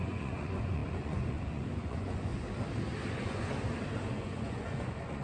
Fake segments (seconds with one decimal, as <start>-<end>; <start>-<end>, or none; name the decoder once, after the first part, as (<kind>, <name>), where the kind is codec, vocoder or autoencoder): 0.0-2.3 (vocoder, Vocos); 3.1-3.5; 4.1-5.2